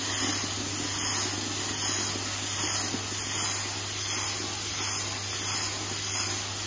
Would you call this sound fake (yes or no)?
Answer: no